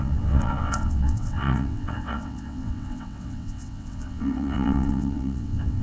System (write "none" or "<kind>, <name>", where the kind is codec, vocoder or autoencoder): vocoder, WaveNeXt